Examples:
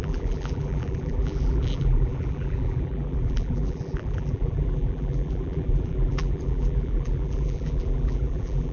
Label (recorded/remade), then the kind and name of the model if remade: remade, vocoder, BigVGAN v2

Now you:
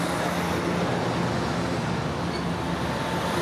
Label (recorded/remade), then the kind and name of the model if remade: recorded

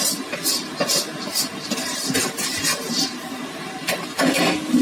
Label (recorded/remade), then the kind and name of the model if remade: remade, vocoder, BigVGAN v2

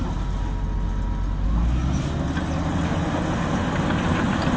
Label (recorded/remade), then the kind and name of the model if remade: recorded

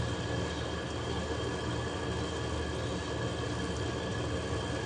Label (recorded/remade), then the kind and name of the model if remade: recorded